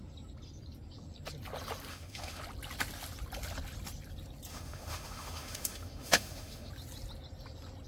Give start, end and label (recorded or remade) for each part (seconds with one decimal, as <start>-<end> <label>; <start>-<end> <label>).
0.0-1.9 recorded; 1.9-2.4 remade; 2.4-4.5 recorded; 4.5-6.7 remade; 6.7-7.9 recorded